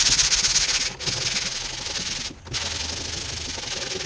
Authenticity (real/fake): real